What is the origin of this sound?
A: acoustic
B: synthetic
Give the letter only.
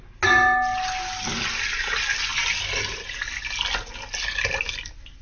A